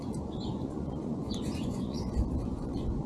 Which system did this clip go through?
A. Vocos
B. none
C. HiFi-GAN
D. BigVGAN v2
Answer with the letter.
A